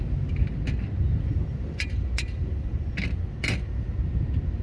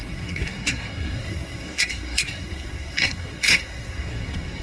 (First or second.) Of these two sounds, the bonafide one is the first